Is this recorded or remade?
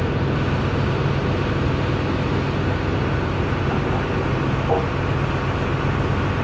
recorded